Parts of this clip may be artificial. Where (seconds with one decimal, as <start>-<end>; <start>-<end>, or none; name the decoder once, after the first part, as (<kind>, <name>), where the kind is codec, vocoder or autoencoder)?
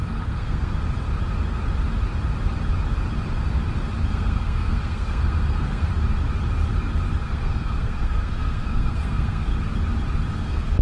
0.0-0.7 (codec, SNAC); 4.1-5.9; 7.2-9.5; 10.3-10.8